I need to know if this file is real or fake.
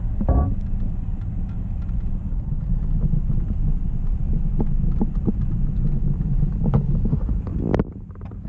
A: real